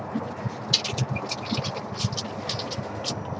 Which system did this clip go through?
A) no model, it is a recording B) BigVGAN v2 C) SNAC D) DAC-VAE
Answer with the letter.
A